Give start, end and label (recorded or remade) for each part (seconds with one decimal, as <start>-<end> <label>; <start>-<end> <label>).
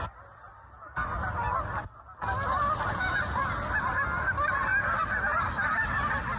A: 0.0-6.4 recorded